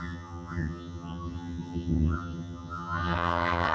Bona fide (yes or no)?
no